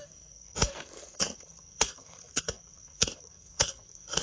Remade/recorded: remade